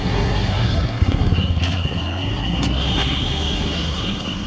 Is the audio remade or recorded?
remade